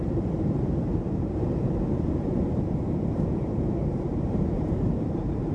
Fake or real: fake